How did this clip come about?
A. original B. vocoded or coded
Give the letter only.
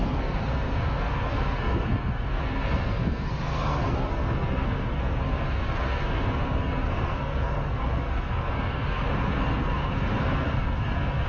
B